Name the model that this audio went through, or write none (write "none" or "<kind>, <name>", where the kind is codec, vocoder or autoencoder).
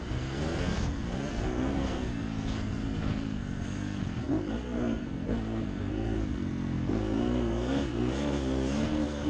codec, SNAC